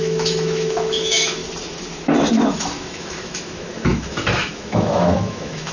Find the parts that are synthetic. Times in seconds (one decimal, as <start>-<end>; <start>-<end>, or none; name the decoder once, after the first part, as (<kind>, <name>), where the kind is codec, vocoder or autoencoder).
0.0-1.4 (autoencoder, DAC-VAE); 2.3-5.7